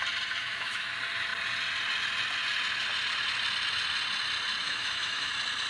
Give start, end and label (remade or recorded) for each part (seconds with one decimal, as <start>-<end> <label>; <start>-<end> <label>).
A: 0.0-0.4 recorded; 0.4-0.9 remade; 0.9-4.6 recorded; 4.6-5.3 remade; 5.3-5.7 recorded